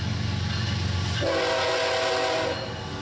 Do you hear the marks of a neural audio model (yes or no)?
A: no